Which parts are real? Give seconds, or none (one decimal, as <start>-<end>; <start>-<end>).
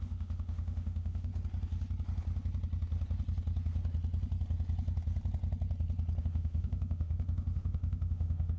1.3-6.2